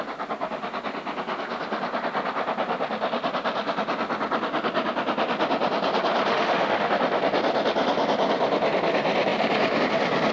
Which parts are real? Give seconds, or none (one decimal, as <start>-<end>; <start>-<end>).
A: 0.0-6.3; 6.9-10.3